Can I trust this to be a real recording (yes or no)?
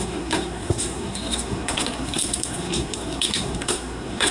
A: no